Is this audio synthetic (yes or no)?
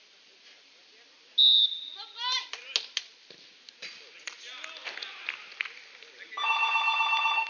no